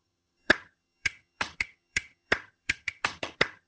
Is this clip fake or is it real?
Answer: fake